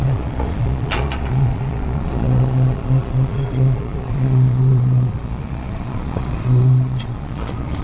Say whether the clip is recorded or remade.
remade